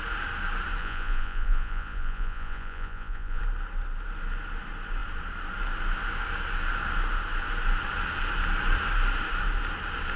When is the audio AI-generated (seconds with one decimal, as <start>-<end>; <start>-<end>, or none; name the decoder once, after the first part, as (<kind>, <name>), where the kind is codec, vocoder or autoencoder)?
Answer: 0.8-3.4 (vocoder, Vocos)